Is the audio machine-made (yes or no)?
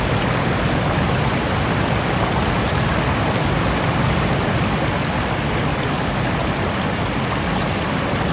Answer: no